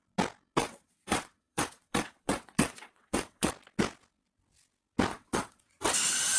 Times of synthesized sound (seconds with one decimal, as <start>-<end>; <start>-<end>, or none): 0.6-3.5; 5.1-6.4